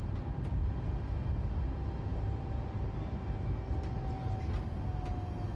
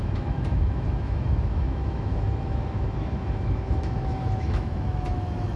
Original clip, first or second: first